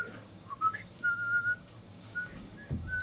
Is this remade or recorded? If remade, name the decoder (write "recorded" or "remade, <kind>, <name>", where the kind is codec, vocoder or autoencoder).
remade, codec, DAC